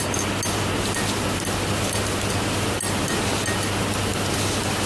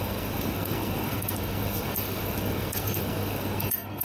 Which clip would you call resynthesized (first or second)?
second